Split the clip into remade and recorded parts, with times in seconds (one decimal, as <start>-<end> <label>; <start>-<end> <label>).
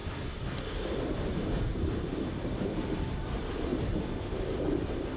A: 0.0-3.7 recorded; 3.7-4.4 remade; 4.4-5.2 recorded